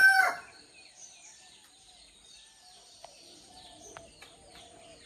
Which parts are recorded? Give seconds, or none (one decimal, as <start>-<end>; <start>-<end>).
none